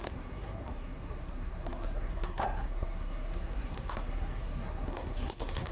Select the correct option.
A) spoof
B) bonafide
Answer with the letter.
A